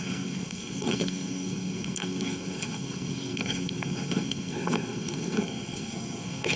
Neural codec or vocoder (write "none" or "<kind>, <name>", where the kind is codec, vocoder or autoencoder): codec, SNAC